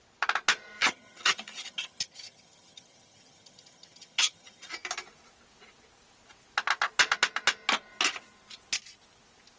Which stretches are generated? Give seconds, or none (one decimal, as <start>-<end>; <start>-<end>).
0.8-4.7